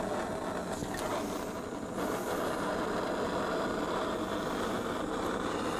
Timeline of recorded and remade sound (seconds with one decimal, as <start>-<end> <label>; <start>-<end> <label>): 0.0-5.8 recorded